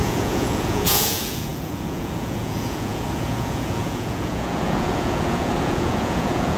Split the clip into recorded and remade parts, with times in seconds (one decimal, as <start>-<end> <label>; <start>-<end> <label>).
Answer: 0.0-6.6 remade